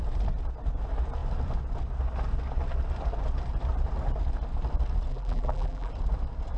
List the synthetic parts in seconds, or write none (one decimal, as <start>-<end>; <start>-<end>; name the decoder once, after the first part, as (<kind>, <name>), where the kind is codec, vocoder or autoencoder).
5.1-5.9 (vocoder, BigVGAN v2)